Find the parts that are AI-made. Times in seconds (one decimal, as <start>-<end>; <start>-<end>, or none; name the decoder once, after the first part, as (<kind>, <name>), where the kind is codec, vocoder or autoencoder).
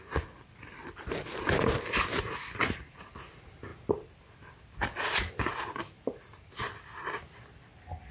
none